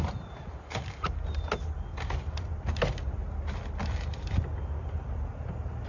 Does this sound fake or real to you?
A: real